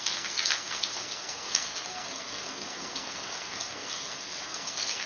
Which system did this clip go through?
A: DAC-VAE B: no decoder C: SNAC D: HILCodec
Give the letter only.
C